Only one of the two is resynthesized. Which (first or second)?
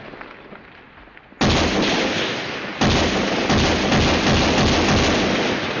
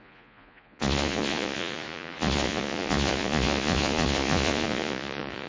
second